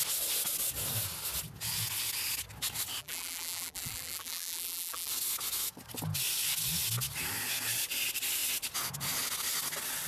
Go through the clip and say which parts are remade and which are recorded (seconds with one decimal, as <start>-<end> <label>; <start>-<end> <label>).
0.0-3.0 recorded; 3.0-5.1 remade; 5.1-10.1 recorded

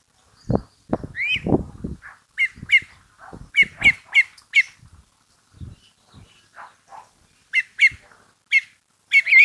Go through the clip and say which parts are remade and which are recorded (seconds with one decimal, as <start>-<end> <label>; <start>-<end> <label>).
0.0-6.9 recorded; 6.9-7.6 remade; 7.6-9.4 recorded

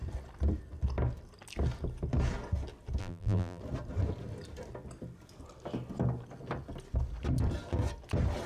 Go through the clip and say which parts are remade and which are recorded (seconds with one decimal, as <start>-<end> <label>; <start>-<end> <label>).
0.0-3.0 recorded; 3.0-3.6 remade; 3.6-8.5 recorded

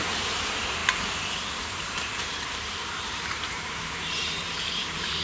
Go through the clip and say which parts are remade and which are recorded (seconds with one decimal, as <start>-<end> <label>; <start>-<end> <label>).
0.0-0.8 remade; 0.8-2.2 recorded; 2.2-5.2 remade

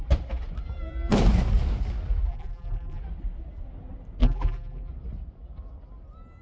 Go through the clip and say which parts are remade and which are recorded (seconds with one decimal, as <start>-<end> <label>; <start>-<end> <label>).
0.0-2.3 recorded; 2.3-3.0 remade; 3.0-4.2 recorded; 4.2-4.9 remade; 4.9-6.4 recorded

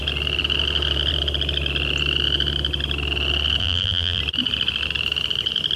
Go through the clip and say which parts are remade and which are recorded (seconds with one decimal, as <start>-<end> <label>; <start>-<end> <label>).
0.0-3.6 recorded; 3.6-4.2 remade; 4.2-5.8 recorded

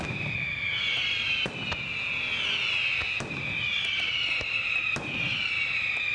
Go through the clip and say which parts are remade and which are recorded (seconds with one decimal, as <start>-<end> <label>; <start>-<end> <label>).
0.0-1.9 remade; 1.9-3.3 recorded; 3.3-6.1 remade

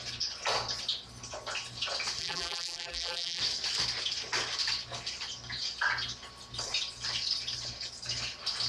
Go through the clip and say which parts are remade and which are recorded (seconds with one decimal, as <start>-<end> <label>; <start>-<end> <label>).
0.0-2.2 recorded; 2.2-3.4 remade; 3.4-8.7 recorded